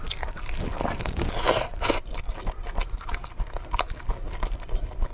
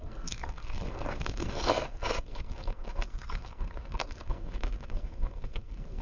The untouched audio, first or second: first